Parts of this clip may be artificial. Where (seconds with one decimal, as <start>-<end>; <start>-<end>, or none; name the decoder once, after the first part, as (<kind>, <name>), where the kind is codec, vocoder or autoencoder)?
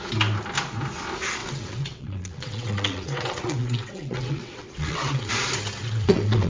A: 1.4-5.3 (vocoder, WaveNeXt); 5.8-6.5